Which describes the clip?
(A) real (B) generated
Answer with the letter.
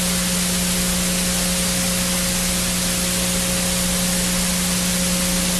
A